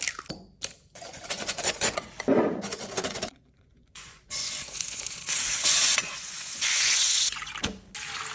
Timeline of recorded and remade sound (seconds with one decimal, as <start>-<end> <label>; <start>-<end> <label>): 0.0-0.9 recorded; 0.9-2.1 remade; 2.1-2.5 recorded; 2.5-7.5 remade; 7.5-8.3 recorded